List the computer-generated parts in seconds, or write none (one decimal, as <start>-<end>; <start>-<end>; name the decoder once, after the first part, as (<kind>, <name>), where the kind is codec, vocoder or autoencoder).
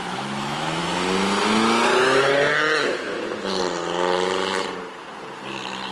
0.0-0.8 (autoencoder, DAC-VAE); 2.5-3.6